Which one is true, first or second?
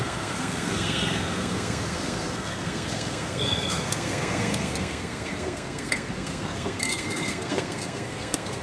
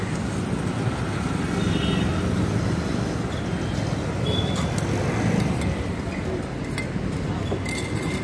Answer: second